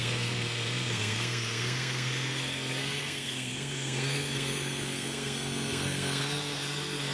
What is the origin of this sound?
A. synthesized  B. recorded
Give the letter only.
A